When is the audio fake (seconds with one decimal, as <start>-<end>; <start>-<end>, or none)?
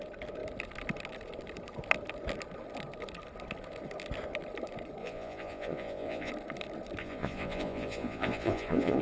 5.0-6.3; 7.0-9.0